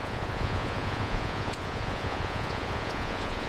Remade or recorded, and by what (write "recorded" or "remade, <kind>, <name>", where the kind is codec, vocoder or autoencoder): remade, vocoder, Vocos